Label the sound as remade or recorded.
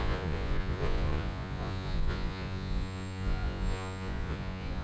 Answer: remade